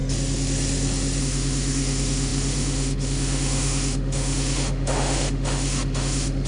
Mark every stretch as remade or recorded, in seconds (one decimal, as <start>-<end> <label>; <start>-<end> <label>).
0.0-1.2 recorded; 1.2-6.5 remade